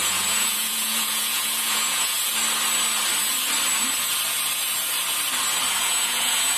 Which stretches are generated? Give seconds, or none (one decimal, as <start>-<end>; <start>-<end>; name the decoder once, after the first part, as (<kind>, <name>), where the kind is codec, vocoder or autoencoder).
0.0-2.3 (vocoder, Vocos); 5.8-6.6